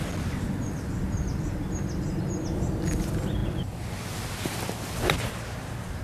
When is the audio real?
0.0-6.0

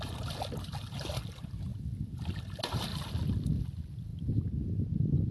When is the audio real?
0.0-5.3

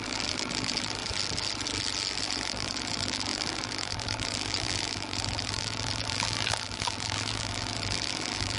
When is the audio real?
1.0-2.2

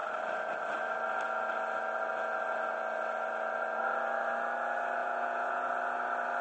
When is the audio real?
0.0-5.0; 5.7-6.4

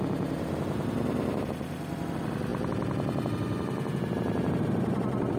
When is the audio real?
0.0-5.4